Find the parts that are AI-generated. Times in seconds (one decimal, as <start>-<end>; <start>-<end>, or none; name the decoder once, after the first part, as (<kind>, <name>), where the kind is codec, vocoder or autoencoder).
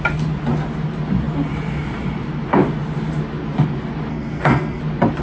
4.1-4.8 (codec, SNAC)